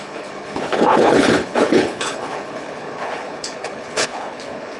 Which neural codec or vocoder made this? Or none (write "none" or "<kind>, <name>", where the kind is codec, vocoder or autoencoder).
codec, HILCodec